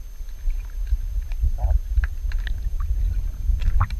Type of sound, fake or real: real